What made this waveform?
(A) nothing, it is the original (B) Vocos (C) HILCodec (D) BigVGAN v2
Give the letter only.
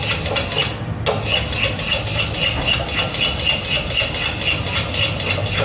A